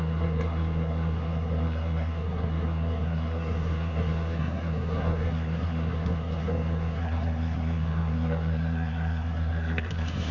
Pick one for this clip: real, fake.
fake